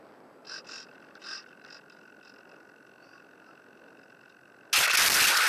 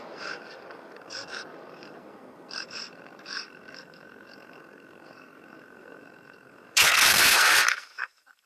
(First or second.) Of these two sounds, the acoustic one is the first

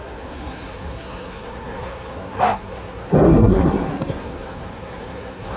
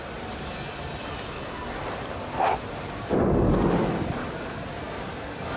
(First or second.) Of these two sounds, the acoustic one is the second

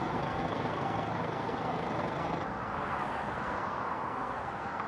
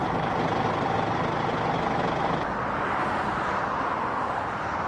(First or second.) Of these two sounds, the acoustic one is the second